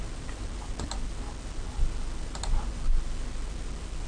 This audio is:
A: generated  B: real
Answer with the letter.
B